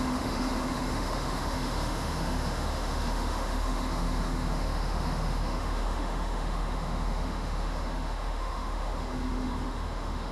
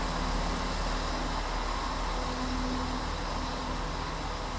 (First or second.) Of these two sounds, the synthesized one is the first